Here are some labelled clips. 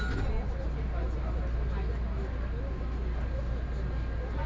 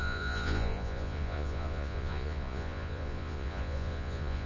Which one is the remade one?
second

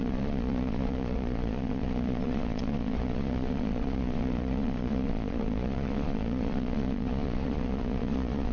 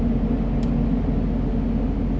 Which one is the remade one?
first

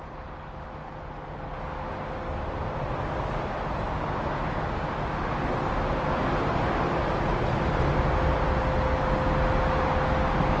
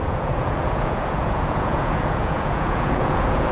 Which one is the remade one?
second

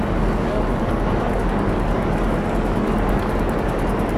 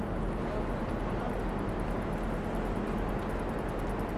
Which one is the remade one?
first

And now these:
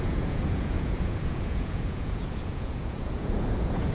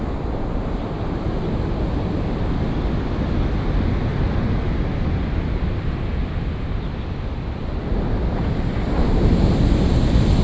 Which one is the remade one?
first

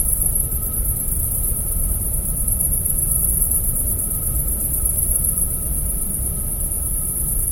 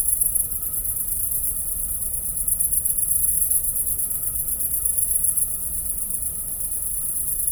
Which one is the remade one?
first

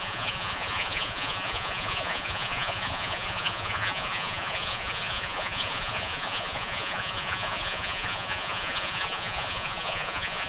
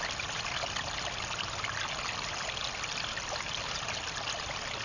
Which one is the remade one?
first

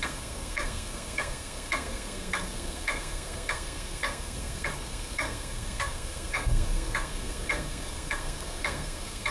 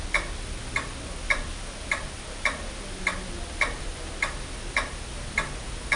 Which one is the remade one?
first